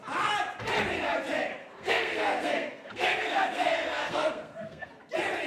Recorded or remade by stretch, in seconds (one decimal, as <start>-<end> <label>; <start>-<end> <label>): 0.0-1.6 recorded; 1.6-4.9 remade; 4.9-5.5 recorded